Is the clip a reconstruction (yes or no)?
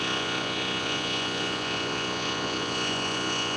yes